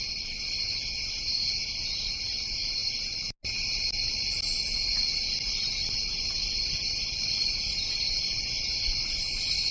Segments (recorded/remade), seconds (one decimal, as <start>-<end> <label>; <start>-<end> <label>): 0.0-6.4 recorded; 6.4-7.9 remade; 7.9-9.7 recorded